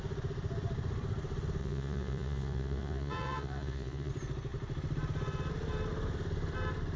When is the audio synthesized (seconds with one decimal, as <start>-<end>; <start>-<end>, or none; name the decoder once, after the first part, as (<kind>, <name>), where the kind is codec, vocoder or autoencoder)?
1.6-4.1 (vocoder, Vocos)